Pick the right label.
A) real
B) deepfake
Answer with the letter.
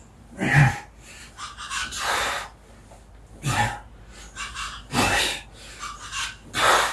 A